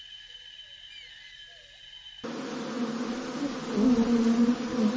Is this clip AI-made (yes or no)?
no